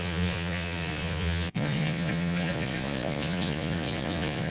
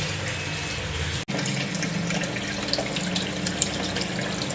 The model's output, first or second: first